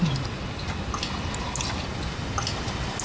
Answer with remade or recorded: recorded